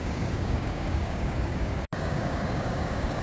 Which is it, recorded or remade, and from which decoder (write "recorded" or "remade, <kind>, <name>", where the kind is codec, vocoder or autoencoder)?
remade, codec, DAC